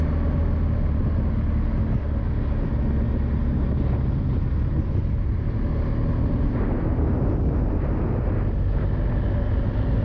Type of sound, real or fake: real